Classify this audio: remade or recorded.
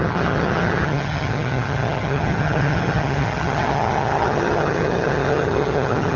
remade